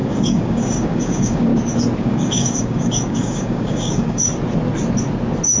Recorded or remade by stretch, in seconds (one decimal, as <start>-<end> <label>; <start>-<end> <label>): 0.0-1.5 remade; 1.5-2.0 recorded; 2.0-4.2 remade; 4.2-5.6 recorded